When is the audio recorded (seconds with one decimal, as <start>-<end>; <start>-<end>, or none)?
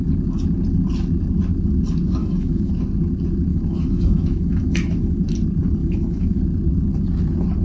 0.0-2.2; 2.7-3.5; 5.2-5.8; 6.4-7.6